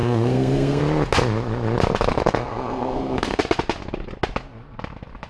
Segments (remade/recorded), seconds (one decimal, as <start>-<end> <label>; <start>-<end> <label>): 0.0-0.8 remade; 0.8-2.1 recorded; 2.1-3.4 remade; 3.4-5.3 recorded